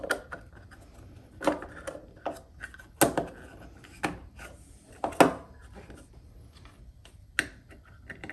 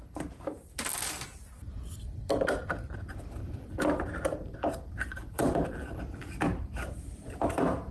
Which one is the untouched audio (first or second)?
first